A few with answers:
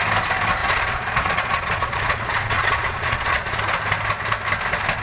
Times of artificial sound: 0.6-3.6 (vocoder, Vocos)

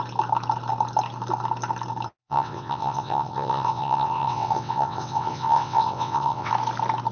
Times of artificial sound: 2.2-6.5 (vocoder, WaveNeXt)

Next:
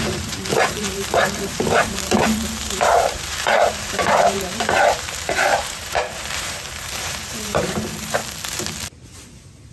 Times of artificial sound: 0.0-8.2 (vocoder, BigVGAN v2)

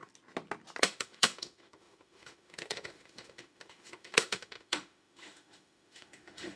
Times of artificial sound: 0.8-6.6 (autoencoder, DAC-VAE)